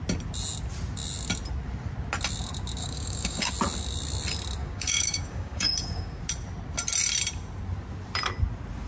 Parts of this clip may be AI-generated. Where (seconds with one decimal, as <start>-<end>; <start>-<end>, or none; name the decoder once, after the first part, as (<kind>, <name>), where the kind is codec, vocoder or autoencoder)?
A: 2.8-3.5 (codec, DAC); 4.6-6.2